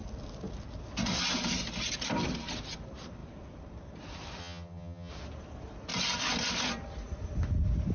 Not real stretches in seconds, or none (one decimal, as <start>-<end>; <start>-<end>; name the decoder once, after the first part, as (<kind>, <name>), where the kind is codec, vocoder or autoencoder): 4.4-5.1 (vocoder, HiFi-GAN)